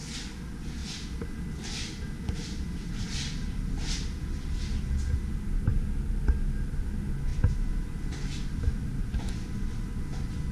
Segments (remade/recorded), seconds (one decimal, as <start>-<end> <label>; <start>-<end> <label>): 0.0-10.5 recorded